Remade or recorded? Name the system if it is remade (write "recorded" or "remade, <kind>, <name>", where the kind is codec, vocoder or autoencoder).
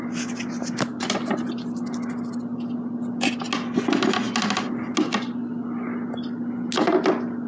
recorded